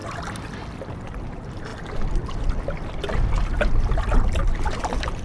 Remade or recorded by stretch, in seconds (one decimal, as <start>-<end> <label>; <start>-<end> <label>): 0.0-0.9 recorded; 0.9-1.7 remade; 1.7-4.8 recorded; 4.8-5.2 remade